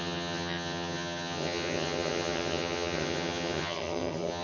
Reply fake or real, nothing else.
fake